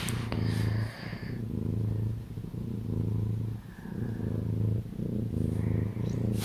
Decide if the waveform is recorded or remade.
recorded